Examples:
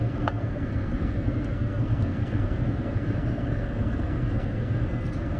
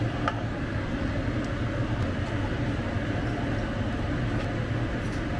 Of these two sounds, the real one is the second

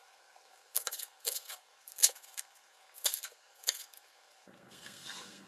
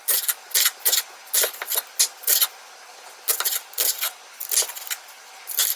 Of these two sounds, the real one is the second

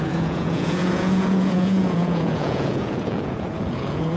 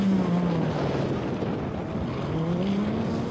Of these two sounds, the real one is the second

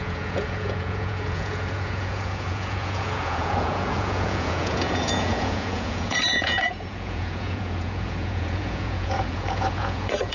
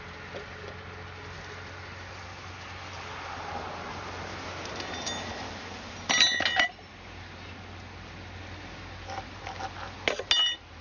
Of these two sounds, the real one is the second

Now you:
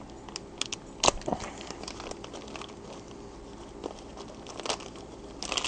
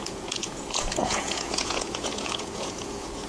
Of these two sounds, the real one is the first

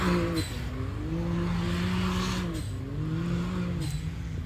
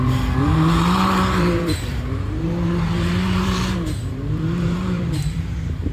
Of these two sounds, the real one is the first